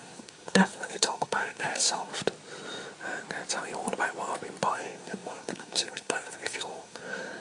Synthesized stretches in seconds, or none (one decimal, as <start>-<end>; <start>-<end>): 0.0-2.1; 4.7-7.4